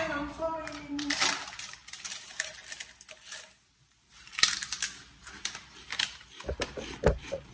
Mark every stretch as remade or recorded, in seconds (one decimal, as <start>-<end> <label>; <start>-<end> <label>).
0.0-2.6 remade; 2.6-3.5 recorded; 3.5-4.3 remade; 4.3-5.2 recorded; 5.2-7.5 remade